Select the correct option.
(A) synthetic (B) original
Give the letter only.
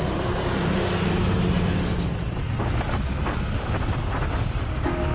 B